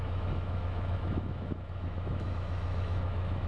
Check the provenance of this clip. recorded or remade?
remade